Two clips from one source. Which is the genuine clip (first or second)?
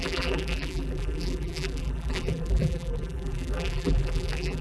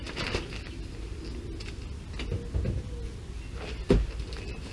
second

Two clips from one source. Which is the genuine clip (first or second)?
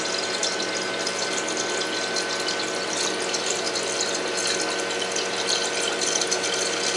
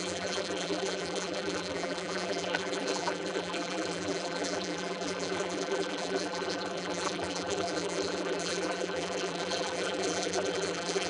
first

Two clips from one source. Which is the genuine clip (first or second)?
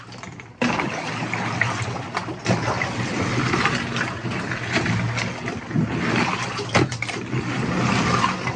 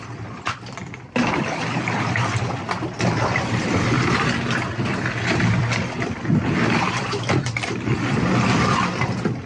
first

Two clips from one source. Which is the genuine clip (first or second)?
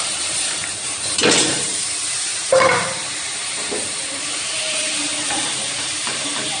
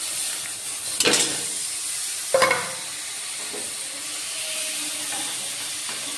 second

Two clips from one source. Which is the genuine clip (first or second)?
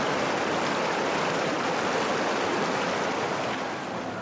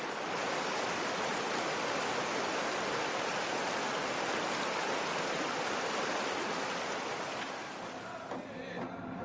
first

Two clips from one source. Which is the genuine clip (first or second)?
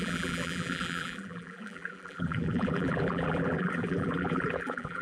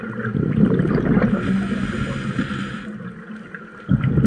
second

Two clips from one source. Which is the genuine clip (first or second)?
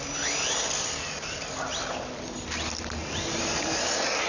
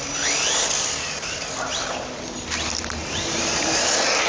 first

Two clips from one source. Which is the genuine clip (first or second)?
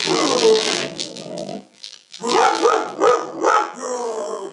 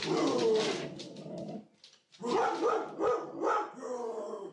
second